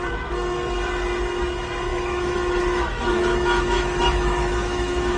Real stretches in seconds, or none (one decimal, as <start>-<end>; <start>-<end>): 0.0-1.9